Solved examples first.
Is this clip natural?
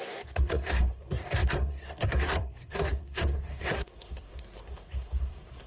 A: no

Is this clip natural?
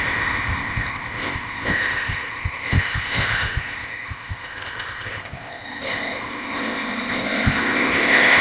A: no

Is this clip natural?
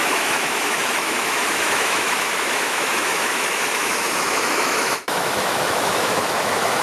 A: no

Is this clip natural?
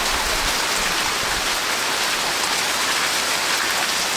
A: yes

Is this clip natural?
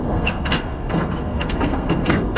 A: no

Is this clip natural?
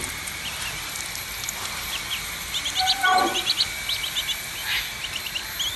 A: yes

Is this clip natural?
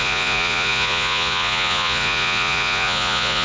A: no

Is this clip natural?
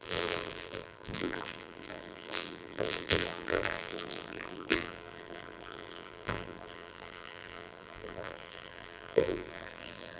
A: no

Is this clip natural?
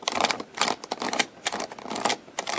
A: yes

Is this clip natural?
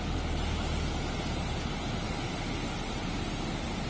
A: yes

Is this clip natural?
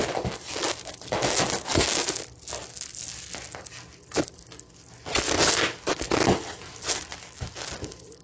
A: yes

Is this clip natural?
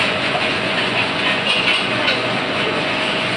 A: no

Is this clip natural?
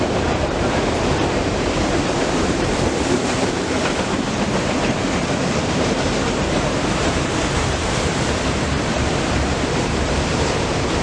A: no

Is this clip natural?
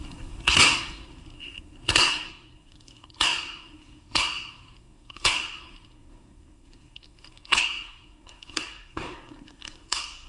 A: no